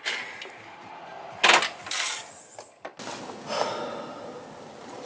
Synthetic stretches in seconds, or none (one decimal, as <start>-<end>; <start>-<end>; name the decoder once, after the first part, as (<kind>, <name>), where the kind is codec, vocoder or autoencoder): none

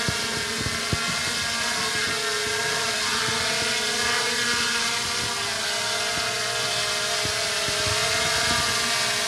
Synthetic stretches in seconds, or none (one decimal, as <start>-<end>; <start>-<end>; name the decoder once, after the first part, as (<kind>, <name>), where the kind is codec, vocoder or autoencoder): none

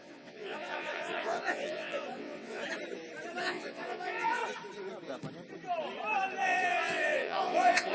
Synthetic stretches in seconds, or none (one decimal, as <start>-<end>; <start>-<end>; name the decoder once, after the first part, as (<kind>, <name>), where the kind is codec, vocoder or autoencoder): 0.0-2.6 (vocoder, WaveNeXt); 3.4-4.4; 6.4-7.9

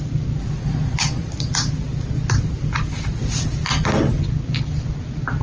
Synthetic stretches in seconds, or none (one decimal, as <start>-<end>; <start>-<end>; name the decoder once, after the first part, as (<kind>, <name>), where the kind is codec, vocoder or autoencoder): 1.2-4.1 (vocoder, BigVGAN v2)

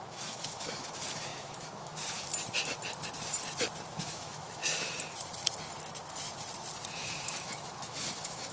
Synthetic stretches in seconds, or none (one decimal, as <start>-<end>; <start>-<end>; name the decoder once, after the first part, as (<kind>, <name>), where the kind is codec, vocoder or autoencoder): 0.0-2.3 (autoencoder, DAC-VAE); 3.9-4.6; 6.9-8.5

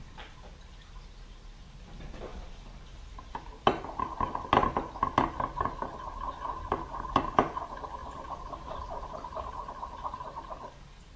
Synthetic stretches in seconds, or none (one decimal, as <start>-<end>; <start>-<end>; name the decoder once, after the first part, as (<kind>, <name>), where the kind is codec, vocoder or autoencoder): none

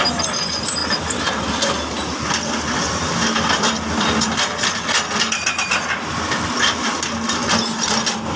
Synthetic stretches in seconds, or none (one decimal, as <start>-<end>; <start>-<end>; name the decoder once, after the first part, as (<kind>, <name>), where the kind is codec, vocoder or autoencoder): none

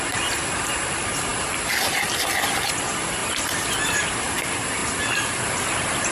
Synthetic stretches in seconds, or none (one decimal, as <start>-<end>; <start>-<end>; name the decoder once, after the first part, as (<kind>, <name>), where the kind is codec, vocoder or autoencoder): 1.3-2.7 (vocoder, BigVGAN v2); 3.2-4.1; 4.8-6.1